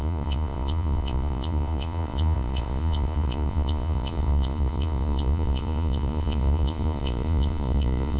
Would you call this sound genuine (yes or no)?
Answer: no